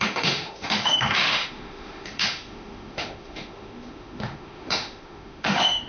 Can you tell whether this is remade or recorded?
remade